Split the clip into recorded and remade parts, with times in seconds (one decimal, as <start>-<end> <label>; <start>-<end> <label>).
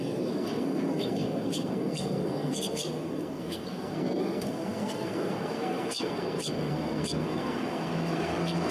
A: 0.0-8.7 remade